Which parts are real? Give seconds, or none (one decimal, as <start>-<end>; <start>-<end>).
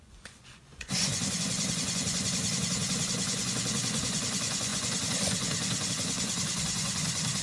none